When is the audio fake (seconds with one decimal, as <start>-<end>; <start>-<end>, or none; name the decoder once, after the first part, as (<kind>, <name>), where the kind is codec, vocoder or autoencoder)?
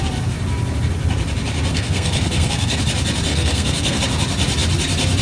1.7-2.8 (codec, SNAC); 3.3-4.0